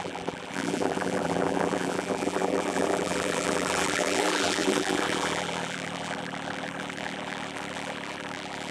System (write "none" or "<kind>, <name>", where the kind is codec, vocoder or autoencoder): vocoder, BigVGAN v2